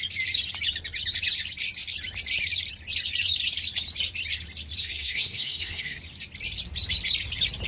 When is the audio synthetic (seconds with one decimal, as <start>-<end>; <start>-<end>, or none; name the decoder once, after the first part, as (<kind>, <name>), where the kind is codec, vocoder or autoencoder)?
4.8-6.0 (codec, SNAC)